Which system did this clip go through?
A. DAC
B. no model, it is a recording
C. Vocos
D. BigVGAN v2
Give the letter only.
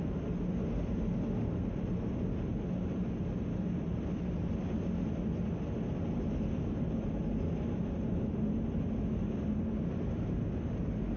B